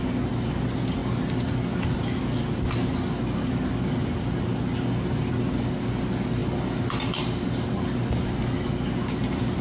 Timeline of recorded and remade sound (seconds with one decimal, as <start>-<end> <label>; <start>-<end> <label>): 0.0-9.6 recorded